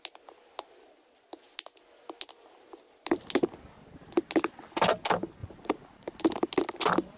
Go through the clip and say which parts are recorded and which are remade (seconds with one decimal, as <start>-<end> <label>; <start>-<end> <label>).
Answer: 0.0-5.4 recorded; 5.4-6.2 remade; 6.2-7.2 recorded